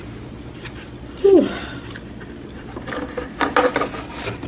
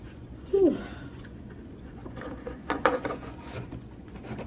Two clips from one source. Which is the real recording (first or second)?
first